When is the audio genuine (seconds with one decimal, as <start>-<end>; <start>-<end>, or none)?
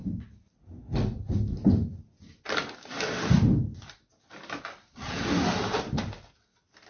0.0-6.9